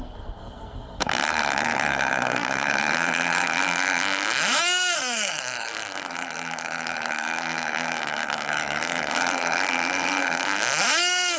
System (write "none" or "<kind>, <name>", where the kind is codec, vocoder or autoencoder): codec, SNAC